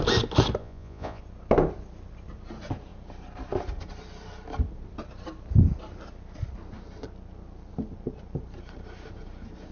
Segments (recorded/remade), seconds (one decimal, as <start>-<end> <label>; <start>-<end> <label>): 0.0-0.6 recorded; 0.6-1.2 remade; 1.2-9.7 recorded